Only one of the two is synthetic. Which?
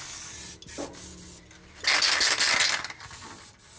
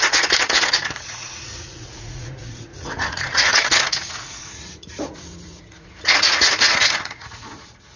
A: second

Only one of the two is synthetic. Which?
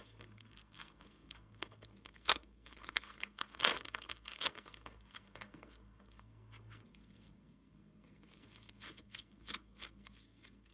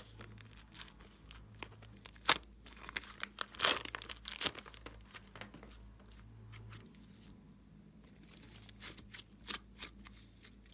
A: first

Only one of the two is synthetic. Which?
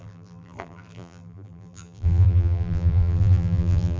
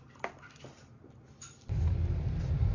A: first